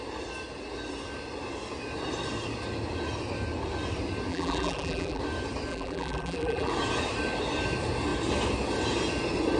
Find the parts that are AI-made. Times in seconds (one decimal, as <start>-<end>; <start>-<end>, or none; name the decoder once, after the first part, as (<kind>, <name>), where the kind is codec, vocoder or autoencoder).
4.3-5.2 (vocoder, BigVGAN v2); 5.7-6.7